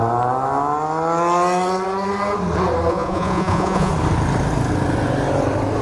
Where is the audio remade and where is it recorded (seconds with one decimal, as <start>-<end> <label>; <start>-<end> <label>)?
0.0-2.9 recorded; 2.9-3.9 remade; 3.9-5.8 recorded